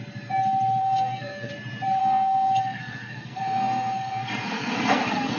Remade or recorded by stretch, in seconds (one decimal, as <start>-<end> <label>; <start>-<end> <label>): 0.0-0.8 recorded; 0.8-1.5 remade; 1.5-2.0 recorded; 2.0-5.4 remade